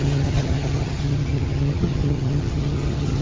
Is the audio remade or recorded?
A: remade